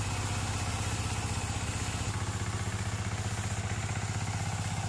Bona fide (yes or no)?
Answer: yes